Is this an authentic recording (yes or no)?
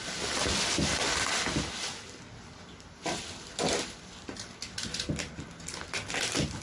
yes